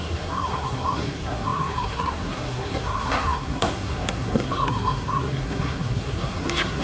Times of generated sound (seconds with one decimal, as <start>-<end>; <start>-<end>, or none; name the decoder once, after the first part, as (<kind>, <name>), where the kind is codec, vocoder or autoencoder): 0.0-6.8 (codec, SNAC)